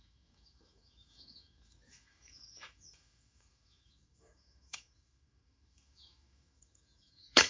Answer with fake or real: fake